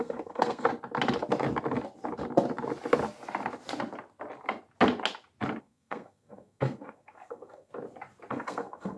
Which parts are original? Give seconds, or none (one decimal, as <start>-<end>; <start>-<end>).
0.7-5.6; 7.7-8.3